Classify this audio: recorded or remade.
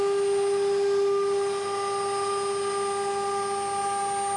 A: recorded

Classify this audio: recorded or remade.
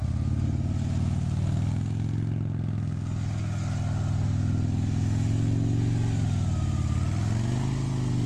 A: recorded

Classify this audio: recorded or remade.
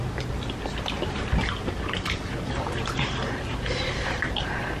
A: recorded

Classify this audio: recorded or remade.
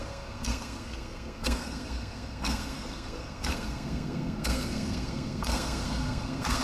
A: remade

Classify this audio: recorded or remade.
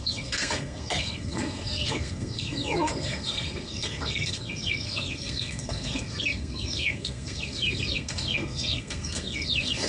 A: remade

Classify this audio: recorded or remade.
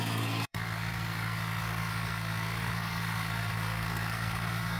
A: remade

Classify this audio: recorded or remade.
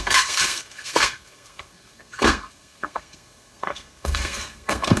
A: remade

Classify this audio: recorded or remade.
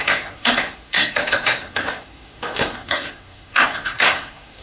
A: remade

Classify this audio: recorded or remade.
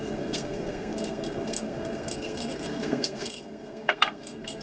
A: remade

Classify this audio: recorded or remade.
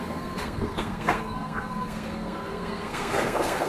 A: remade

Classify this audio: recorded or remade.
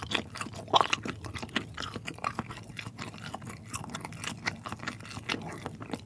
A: recorded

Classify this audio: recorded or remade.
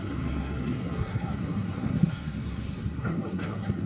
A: remade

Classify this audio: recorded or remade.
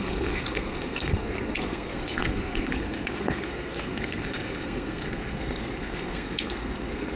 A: remade